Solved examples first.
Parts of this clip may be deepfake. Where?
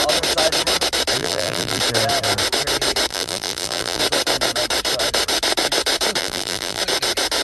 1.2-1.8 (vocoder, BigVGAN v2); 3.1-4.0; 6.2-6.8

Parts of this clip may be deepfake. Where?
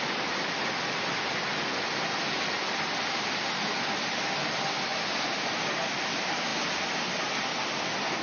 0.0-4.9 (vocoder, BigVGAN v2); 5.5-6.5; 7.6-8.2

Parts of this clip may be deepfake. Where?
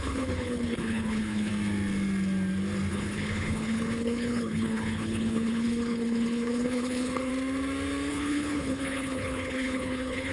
0.0-1.5 (codec, HILCodec); 2.9-7.3; 8.1-10.3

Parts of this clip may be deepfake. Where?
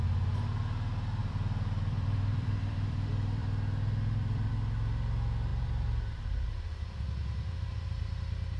1.2-4.5 (vocoder, BigVGAN v2); 5.5-6.5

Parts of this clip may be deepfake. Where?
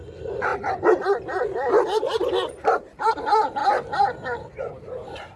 0.0-0.5 (vocoder, BigVGAN v2); 2.0-5.4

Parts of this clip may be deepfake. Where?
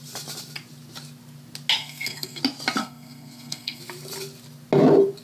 1.8-2.4 (codec, SNAC); 2.8-3.8